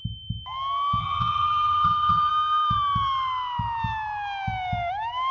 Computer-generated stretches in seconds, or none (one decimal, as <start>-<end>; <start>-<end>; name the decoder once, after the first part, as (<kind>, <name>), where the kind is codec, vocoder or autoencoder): 1.0-2.3 (vocoder, HiFi-GAN)

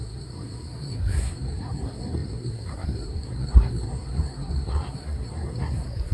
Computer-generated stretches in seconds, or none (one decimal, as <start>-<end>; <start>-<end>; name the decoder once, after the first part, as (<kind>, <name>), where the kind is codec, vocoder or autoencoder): 0.0-6.1 (codec, SNAC)

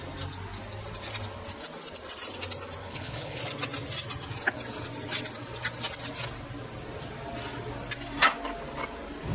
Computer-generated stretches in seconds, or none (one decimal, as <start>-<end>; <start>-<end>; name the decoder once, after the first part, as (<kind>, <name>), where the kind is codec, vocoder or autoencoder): 2.8-3.4 (codec, HILCodec)